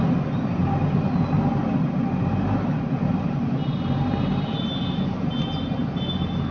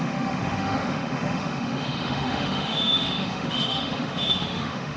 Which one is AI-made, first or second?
second